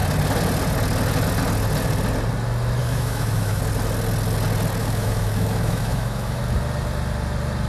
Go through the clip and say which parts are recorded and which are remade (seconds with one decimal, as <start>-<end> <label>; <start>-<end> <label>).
0.0-2.8 recorded; 2.8-3.6 remade; 3.6-4.8 recorded; 4.8-6.4 remade; 6.4-7.7 recorded